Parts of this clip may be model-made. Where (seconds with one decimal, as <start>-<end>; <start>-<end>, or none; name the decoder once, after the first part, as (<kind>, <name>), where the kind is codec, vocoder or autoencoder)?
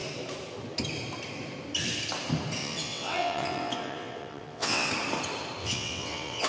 2.6-4.9 (vocoder, WaveNeXt); 5.6-6.5